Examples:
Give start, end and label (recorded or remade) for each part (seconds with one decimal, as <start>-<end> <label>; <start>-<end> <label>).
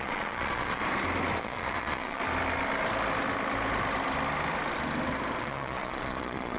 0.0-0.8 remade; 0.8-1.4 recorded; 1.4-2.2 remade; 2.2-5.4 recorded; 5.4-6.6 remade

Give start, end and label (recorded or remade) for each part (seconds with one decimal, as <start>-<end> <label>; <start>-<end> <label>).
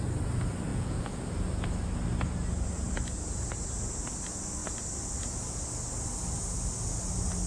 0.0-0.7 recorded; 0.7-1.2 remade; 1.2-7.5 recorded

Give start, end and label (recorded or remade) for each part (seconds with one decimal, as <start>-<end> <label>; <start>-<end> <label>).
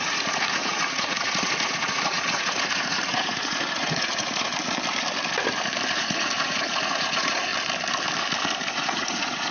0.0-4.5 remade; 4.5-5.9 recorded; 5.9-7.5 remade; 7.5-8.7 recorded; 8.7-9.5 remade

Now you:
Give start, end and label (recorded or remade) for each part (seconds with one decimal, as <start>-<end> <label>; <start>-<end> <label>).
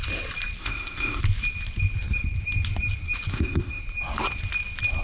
0.0-0.6 recorded; 0.6-1.2 remade; 1.2-3.3 recorded; 3.3-3.8 remade; 3.8-5.0 recorded